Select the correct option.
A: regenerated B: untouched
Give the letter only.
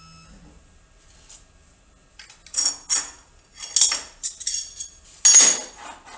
B